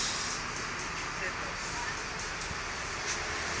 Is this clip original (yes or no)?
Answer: yes